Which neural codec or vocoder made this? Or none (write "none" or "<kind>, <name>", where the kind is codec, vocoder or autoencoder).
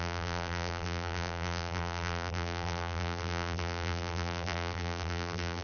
vocoder, BigVGAN v2